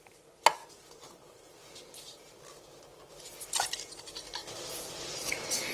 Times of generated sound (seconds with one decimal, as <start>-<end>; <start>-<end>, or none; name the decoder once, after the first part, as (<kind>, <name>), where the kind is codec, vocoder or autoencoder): 4.4-5.7 (vocoder, BigVGAN v2)

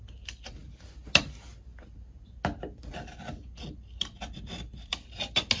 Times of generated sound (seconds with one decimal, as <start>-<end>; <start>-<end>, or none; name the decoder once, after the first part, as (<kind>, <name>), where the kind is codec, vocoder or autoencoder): none

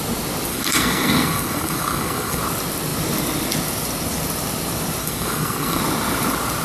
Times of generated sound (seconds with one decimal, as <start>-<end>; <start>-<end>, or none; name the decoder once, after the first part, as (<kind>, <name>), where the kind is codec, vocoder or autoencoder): 0.5-2.4 (codec, SNAC); 5.0-5.8